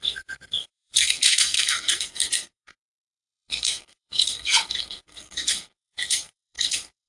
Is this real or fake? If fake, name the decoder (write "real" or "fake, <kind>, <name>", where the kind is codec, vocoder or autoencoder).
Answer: fake, codec, SNAC